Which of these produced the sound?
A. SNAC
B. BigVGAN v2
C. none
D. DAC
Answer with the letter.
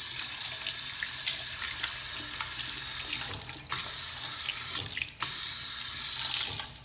C